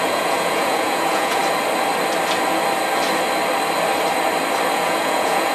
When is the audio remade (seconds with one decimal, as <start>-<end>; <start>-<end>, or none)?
0.0-1.4; 4.7-5.5

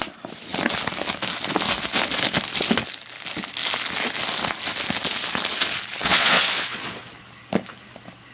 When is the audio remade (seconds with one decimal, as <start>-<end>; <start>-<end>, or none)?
6.0-7.0

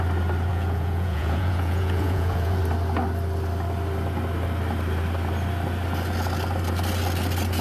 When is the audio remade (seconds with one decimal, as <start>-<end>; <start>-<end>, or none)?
0.5-2.6

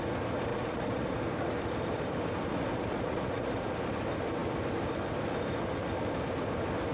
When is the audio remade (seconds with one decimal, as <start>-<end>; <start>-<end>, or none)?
0.5-1.2; 2.5-3.7